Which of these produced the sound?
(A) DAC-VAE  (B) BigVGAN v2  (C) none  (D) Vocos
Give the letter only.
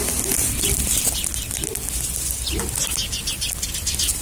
C